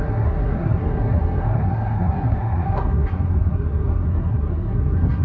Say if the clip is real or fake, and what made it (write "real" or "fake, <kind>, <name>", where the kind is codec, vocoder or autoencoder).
fake, codec, SNAC